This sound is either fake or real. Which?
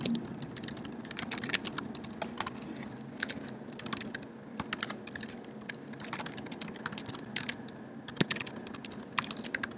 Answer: real